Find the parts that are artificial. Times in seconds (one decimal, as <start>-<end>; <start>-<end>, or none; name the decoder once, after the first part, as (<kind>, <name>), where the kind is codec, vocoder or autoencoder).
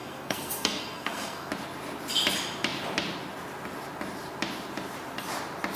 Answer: 0.0-1.5 (codec, SNAC)